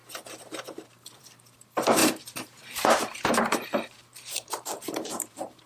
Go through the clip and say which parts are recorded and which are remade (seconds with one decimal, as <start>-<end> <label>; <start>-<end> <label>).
0.0-1.4 remade; 1.4-2.0 recorded; 2.0-5.7 remade